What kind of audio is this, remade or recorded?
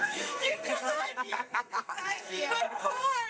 remade